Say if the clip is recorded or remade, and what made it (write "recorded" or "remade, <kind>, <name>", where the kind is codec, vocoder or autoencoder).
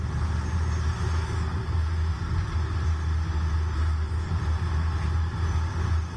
recorded